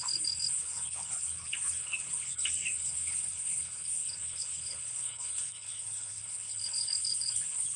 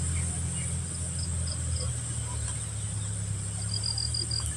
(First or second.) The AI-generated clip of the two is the first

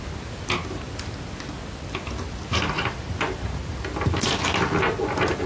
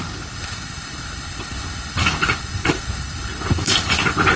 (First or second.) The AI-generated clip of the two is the second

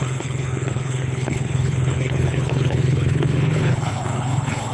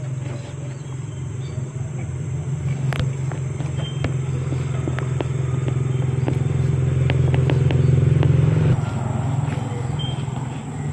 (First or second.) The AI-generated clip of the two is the first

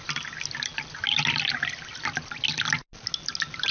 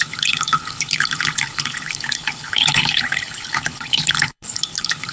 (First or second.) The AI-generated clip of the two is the second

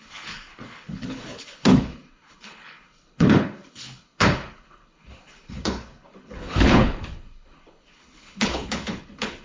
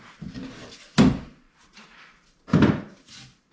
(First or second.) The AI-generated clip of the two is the first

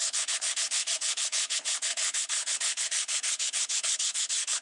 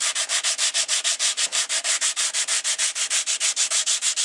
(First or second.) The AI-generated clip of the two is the first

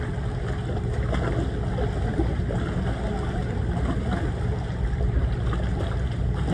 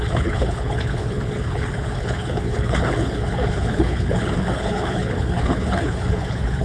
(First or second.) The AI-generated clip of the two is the second